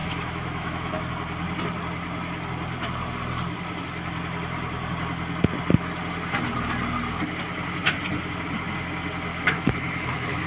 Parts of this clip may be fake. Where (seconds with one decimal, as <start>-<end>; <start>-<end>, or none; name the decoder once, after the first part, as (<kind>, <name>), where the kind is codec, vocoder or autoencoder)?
0.0-1.0 (autoencoder, DAC-VAE); 9.3-10.5

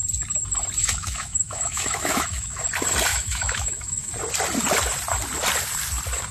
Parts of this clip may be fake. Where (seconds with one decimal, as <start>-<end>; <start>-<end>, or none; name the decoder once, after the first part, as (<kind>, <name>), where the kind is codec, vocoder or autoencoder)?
0.8-2.6 (autoencoder, DAC-VAE); 3.1-4.1

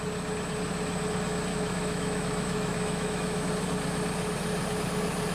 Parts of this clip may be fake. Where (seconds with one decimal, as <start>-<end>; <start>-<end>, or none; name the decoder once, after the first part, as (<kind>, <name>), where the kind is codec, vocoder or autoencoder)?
1.5-3.5 (autoencoder, DAC-VAE)

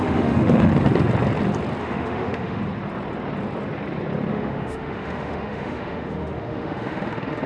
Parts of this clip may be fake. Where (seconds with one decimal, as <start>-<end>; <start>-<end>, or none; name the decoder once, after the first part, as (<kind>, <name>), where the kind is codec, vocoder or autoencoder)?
0.0-0.7 (autoencoder, DAC-VAE); 1.8-2.6; 4.3-7.5

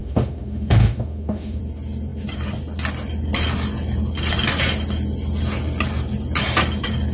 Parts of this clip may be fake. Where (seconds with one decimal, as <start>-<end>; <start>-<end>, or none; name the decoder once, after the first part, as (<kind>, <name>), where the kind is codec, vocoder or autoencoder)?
0.0-1.6 (autoencoder, DAC-VAE)

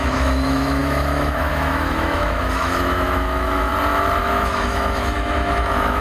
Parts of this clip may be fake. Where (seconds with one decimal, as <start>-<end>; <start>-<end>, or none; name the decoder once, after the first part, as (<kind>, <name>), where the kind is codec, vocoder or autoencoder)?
0.0-3.7 (autoencoder, DAC-VAE); 4.2-6.0